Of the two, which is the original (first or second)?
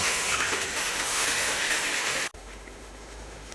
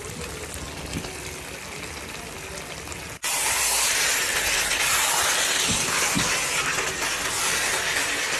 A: second